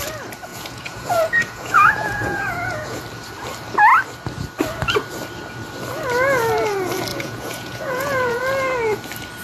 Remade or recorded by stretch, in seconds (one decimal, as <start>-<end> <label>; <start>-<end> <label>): 0.0-0.5 recorded; 0.5-3.0 remade; 3.0-7.1 recorded; 7.1-8.4 remade; 8.4-9.4 recorded